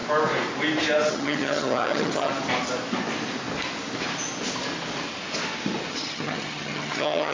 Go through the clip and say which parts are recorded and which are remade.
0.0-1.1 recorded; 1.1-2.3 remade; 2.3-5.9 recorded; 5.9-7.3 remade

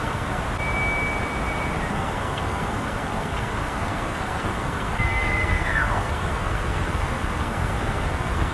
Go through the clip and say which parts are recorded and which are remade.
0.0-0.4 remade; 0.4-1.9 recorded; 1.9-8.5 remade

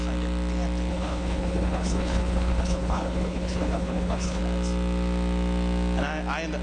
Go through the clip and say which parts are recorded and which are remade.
0.0-0.9 recorded; 0.9-4.4 remade; 4.4-6.6 recorded

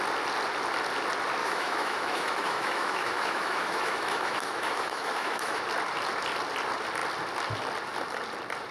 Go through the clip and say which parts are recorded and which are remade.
0.0-1.4 recorded; 1.4-5.6 remade; 5.6-8.7 recorded

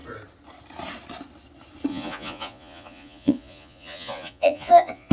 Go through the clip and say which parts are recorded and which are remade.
0.0-1.9 recorded; 1.9-5.1 remade

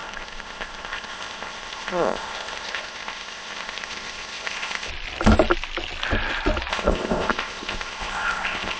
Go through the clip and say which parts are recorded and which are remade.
0.0-4.9 remade; 4.9-6.7 recorded; 6.7-8.8 remade

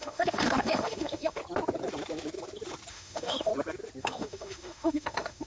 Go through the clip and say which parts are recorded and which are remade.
0.0-1.4 remade; 1.4-2.9 recorded; 2.9-3.5 remade; 3.5-4.0 recorded; 4.0-5.5 remade